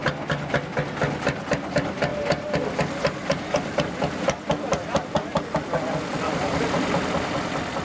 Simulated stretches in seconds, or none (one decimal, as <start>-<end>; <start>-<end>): 2.1-4.0